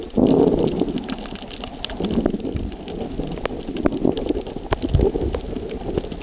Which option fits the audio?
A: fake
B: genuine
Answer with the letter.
B